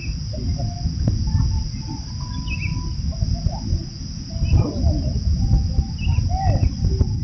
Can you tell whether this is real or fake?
real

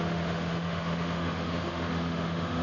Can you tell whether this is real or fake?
fake